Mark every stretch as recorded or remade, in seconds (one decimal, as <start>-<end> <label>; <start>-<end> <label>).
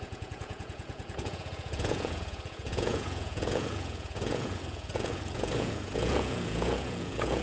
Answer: 0.0-7.4 remade